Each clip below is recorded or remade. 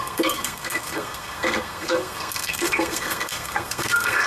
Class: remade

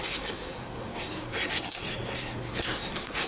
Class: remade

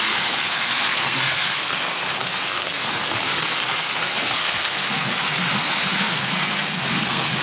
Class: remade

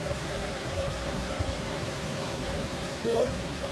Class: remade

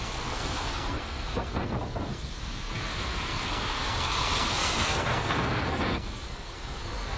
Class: remade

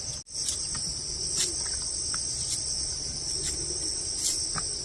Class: recorded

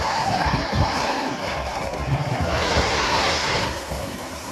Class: remade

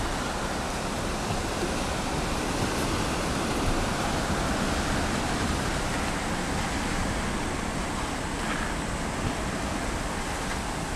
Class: recorded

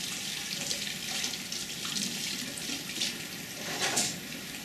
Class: recorded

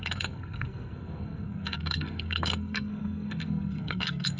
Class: remade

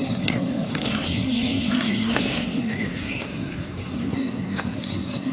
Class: remade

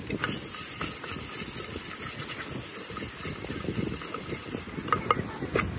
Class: recorded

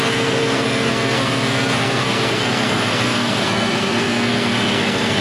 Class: remade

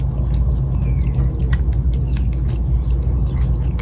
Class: recorded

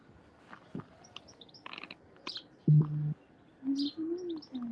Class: recorded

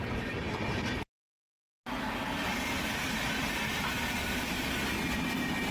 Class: recorded